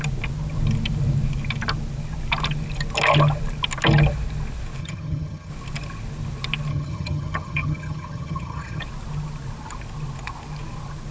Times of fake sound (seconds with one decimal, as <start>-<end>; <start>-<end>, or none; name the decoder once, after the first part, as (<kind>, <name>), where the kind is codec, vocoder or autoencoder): 4.8-5.5 (vocoder, HiFi-GAN); 6.7-8.8

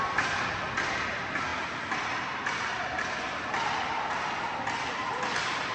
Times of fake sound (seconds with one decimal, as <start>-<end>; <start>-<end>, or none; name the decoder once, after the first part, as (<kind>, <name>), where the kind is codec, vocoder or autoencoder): none

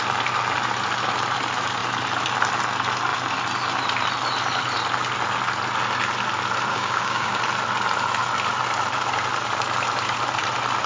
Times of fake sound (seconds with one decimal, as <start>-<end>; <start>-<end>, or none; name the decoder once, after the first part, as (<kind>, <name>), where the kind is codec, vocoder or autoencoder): 6.7-7.4 (codec, DAC)

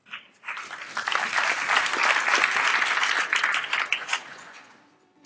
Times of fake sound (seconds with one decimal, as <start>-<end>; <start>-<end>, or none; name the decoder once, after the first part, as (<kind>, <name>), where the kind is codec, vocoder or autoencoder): 3.9-5.3 (vocoder, Vocos)

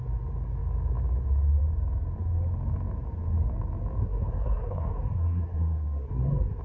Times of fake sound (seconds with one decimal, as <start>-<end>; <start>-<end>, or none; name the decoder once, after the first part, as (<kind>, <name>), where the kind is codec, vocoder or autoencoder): 4.0-6.6 (codec, SNAC)

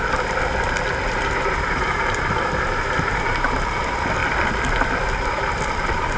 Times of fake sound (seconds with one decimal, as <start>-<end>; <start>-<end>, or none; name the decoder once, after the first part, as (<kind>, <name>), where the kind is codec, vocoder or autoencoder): 1.0-3.8 (vocoder, BigVGAN v2)

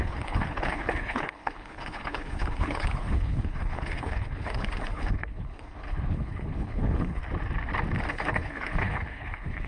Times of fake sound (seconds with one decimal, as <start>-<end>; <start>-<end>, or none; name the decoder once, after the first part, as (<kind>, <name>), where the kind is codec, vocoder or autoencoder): 0.0-7.2 (codec, HILCodec); 8.1-9.7

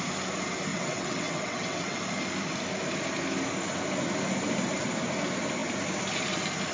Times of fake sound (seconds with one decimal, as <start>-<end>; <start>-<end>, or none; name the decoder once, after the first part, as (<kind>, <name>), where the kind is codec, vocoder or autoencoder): 0.7-2.0 (vocoder, WaveNeXt)